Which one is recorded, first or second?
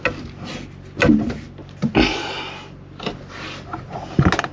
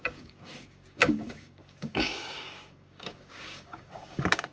first